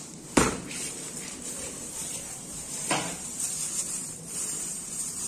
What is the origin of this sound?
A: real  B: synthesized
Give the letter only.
B